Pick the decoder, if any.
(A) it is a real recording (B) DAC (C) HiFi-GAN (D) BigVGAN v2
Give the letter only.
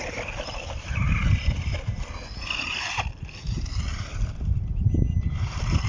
A